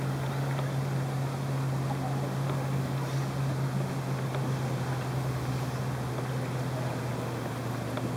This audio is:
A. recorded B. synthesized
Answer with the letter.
A